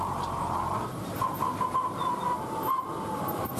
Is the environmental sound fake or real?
real